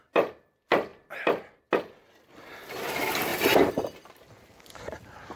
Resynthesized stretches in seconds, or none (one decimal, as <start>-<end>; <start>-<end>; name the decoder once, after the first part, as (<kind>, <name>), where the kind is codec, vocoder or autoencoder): 3.3-4.8 (vocoder, BigVGAN v2)